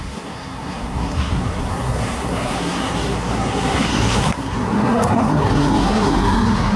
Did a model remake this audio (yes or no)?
yes